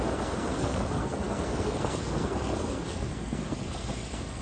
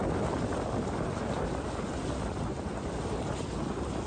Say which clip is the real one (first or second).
second